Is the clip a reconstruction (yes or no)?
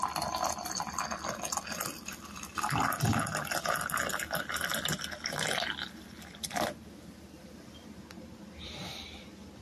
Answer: no